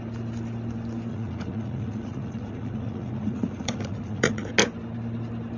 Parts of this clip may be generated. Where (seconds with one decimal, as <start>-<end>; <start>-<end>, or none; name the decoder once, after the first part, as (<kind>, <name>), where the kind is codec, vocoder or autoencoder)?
1.1-4.5 (vocoder, Vocos)